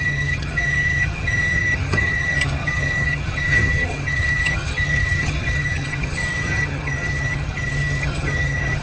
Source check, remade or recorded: remade